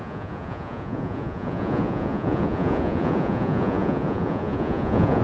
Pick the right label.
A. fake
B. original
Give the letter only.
A